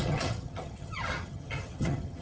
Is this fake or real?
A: fake